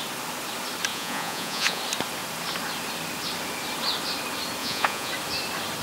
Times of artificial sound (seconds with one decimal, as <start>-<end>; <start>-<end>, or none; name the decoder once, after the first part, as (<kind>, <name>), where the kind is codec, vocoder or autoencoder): 0.9-1.8 (vocoder, Vocos); 4.6-5.1

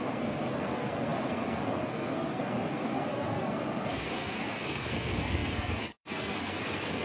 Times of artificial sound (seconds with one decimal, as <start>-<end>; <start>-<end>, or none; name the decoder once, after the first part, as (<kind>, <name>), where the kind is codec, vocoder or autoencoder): 0.0-7.0 (codec, SNAC)